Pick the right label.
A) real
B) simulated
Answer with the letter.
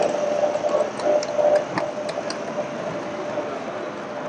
A